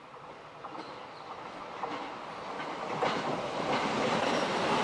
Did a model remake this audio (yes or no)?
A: no